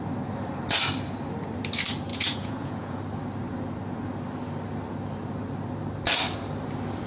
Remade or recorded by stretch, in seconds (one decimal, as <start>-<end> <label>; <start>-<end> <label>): 0.0-2.1 recorded; 2.1-3.0 remade; 3.0-7.1 recorded